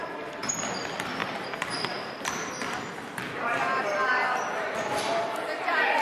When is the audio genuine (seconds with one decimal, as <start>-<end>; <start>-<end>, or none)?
none